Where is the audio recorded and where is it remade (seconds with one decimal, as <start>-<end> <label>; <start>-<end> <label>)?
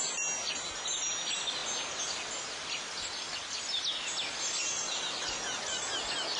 0.0-6.4 recorded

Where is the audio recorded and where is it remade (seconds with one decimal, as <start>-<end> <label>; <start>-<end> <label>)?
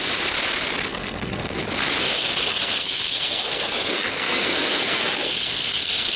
0.0-0.9 recorded; 0.9-1.6 remade; 1.6-2.2 recorded; 2.2-6.2 remade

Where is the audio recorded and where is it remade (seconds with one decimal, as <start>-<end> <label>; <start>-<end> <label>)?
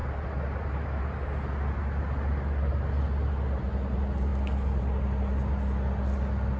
0.0-6.6 recorded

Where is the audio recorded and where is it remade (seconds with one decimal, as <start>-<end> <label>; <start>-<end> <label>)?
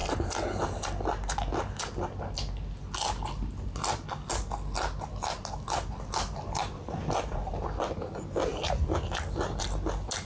0.0-10.2 recorded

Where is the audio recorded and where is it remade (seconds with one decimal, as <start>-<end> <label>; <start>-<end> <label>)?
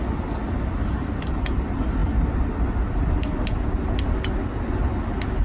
0.0-5.4 recorded